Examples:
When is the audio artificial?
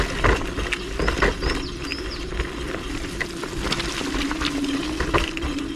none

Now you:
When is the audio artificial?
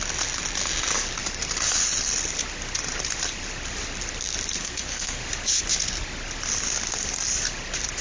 4.6-5.2 (codec, SNAC)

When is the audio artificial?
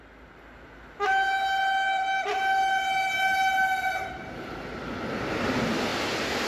none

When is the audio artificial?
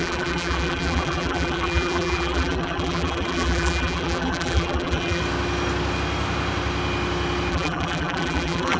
0.0-5.2 (vocoder, BigVGAN v2); 7.5-8.8